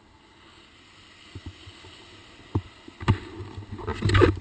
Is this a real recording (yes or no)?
yes